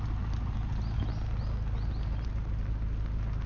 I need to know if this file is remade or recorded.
recorded